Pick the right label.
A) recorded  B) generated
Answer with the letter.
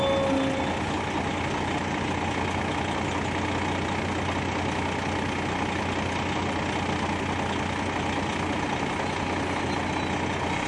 A